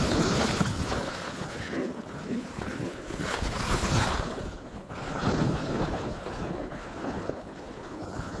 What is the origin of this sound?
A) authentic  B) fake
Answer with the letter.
B